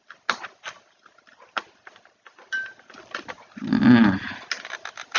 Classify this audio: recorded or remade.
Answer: recorded